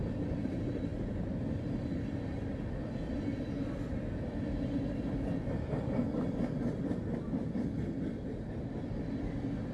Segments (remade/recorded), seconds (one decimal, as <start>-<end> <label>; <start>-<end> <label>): 0.0-9.7 recorded